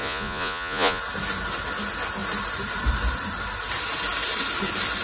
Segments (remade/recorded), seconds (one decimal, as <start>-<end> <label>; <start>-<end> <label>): 0.0-1.0 remade; 1.0-5.0 recorded